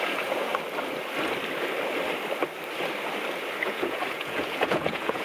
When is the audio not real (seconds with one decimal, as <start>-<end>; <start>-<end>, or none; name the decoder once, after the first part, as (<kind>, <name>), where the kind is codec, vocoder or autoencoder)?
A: 0.0-0.5 (vocoder, Vocos); 3.6-5.2